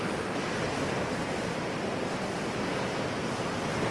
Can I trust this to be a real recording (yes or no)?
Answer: yes